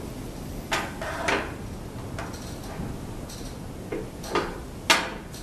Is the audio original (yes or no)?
yes